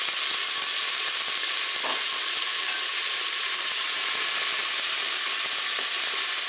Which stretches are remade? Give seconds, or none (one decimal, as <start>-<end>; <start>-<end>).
2.9-4.1